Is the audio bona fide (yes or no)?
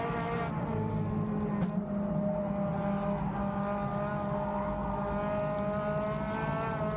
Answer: yes